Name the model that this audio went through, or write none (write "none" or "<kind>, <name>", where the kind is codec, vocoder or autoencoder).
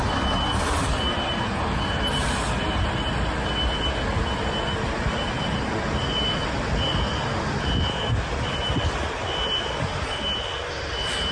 none